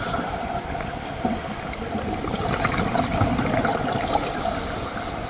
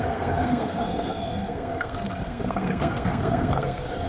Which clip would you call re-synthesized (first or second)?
second